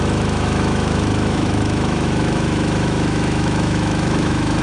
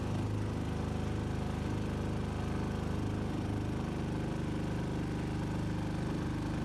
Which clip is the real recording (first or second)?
second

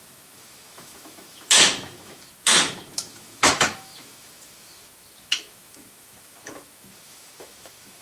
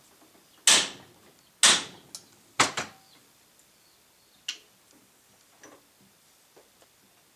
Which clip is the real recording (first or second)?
second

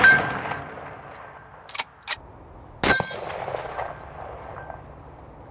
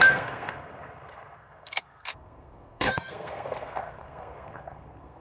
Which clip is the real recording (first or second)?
first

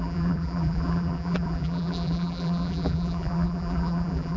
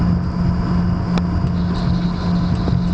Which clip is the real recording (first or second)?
second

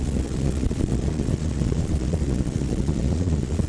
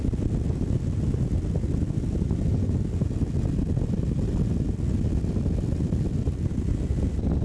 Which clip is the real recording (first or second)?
second